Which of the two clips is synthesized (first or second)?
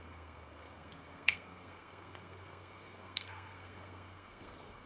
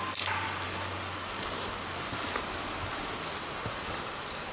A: first